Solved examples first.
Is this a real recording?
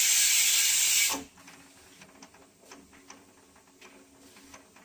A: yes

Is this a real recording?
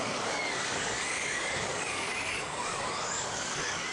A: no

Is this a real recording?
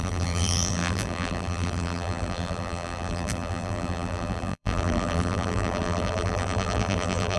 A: no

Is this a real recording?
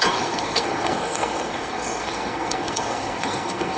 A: no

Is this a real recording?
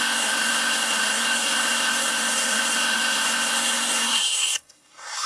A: no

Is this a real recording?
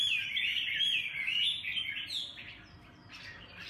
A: yes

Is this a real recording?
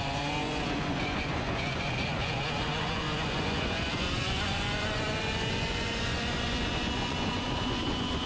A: no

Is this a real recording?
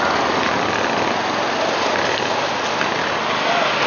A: yes